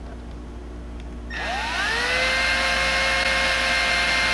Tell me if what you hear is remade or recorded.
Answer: recorded